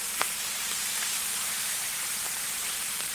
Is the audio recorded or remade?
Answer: remade